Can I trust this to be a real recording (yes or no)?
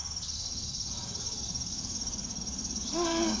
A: no